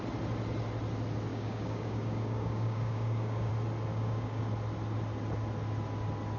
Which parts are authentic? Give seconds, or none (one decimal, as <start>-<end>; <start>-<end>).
0.0-1.3; 3.5-3.9; 4.4-6.4